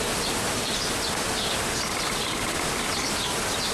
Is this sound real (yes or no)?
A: yes